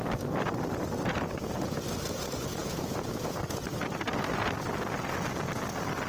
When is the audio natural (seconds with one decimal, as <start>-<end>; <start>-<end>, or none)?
0.0-2.6; 3.4-6.1